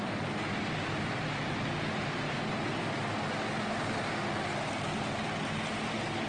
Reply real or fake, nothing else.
real